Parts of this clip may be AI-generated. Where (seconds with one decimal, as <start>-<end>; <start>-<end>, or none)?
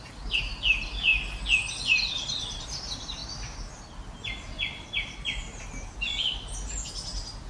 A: none